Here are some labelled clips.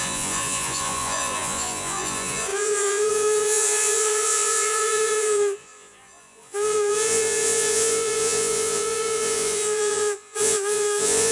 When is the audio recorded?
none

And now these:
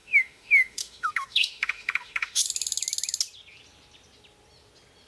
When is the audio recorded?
2.4-5.1

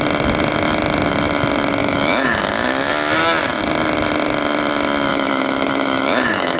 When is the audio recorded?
0.0-1.8; 2.9-5.1